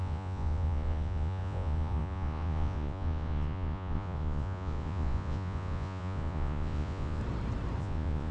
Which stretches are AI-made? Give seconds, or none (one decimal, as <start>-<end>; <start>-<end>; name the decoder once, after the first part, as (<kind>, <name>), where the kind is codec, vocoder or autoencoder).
0.0-7.2 (vocoder, Vocos); 7.8-8.3